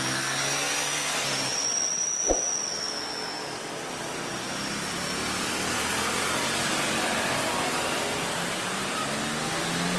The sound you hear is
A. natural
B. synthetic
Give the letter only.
A